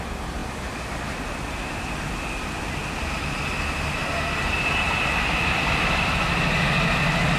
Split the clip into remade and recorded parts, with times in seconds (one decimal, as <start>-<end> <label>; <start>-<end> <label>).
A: 0.0-7.4 recorded